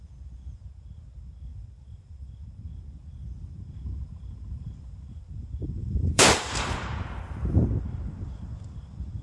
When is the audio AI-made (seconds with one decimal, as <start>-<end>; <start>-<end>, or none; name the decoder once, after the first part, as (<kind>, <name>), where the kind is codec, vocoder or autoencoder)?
1.5-2.3 (vocoder, BigVGAN v2); 5.8-7.2